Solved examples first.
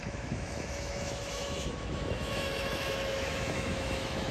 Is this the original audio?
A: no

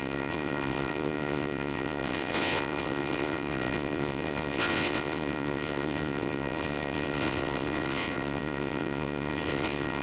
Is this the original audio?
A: no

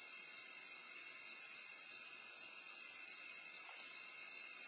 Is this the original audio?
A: yes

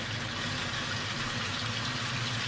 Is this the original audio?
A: yes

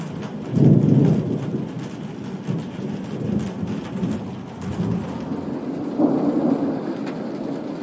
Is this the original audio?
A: yes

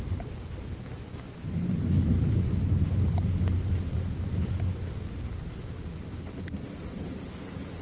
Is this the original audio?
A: yes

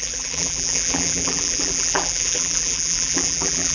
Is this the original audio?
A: no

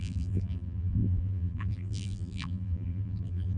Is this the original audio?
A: no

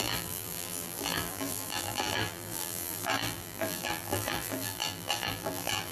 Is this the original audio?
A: no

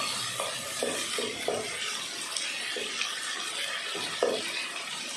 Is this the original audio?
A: yes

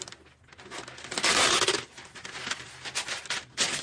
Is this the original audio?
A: yes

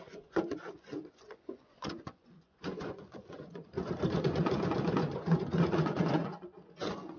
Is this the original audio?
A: no